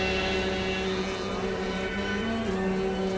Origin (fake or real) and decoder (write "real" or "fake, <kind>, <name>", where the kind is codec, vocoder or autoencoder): real